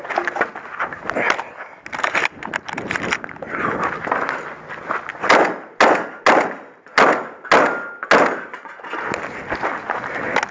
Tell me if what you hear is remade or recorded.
recorded